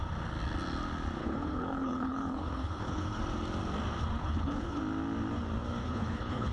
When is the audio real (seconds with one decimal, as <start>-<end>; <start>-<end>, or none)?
0.0-1.2; 3.2-4.2; 4.8-5.8